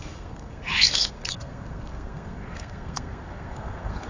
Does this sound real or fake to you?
fake